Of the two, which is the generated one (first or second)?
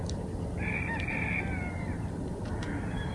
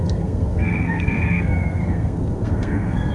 second